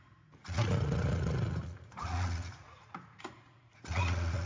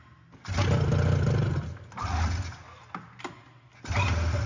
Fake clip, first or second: first